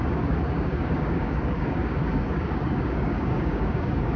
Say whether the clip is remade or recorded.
remade